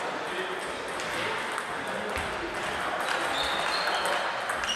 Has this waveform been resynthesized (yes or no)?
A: no